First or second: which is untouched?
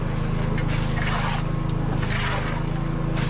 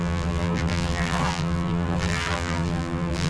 first